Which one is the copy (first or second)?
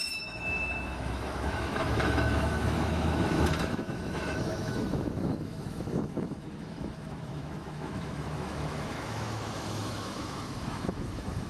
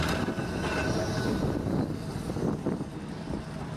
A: first